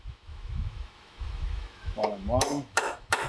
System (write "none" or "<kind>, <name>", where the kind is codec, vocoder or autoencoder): autoencoder, DAC-VAE